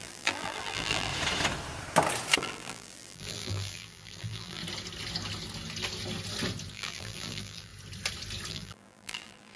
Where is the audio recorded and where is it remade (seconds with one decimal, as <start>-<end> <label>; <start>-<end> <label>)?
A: 0.0-1.1 remade; 1.1-2.4 recorded; 2.4-4.6 remade; 4.6-6.7 recorded; 6.7-7.7 remade; 7.7-8.5 recorded; 8.5-9.6 remade